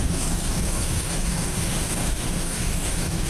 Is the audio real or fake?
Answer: fake